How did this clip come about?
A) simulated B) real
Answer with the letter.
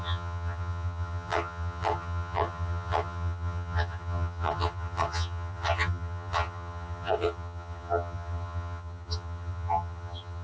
A